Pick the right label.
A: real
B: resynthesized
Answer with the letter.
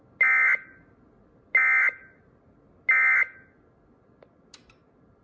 A